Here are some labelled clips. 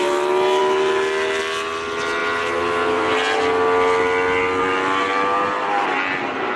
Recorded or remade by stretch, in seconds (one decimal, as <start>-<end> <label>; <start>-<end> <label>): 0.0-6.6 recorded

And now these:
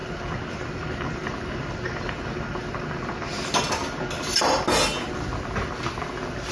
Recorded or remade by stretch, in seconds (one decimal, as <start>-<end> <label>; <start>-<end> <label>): 0.0-6.5 recorded

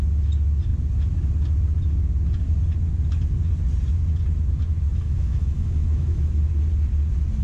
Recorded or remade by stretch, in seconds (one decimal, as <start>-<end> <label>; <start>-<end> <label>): 0.0-4.9 recorded; 4.9-6.4 remade; 6.4-7.4 recorded

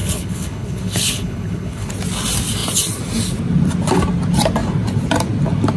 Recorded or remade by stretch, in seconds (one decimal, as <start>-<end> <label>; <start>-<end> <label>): 0.0-1.9 remade; 1.9-5.8 recorded

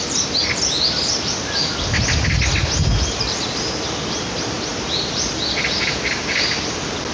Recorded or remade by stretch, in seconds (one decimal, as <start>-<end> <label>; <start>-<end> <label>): 0.0-7.1 recorded